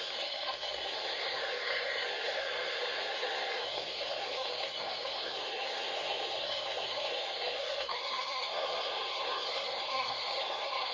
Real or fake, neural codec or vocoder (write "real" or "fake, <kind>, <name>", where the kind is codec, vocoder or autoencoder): fake, codec, SNAC